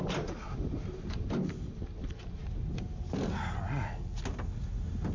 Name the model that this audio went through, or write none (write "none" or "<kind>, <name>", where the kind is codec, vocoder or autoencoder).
none